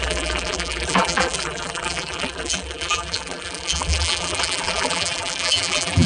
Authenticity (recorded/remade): remade